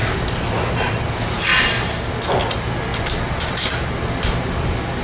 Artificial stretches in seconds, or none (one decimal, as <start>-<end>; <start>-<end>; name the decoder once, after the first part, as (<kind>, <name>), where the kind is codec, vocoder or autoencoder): 0.0-0.9 (vocoder, BigVGAN v2); 1.5-2.1; 2.9-3.9